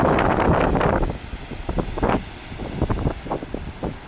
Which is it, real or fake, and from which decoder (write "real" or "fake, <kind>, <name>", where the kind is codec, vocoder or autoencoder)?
real